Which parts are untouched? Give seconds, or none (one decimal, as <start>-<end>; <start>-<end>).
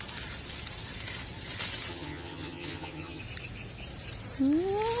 0.0-1.9; 3.2-5.0